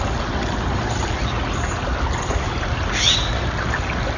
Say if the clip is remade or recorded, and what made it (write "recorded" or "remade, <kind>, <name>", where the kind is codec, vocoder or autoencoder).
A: recorded